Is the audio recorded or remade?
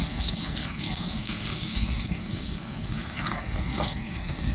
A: remade